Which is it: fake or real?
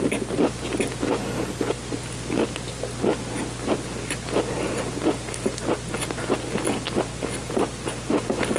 real